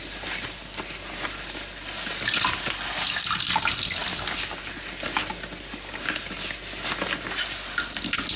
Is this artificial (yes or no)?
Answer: no